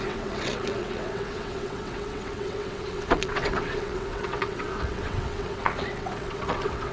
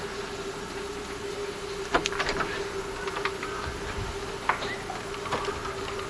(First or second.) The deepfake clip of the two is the first